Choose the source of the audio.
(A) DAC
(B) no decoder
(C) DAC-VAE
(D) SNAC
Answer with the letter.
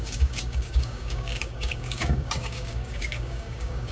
A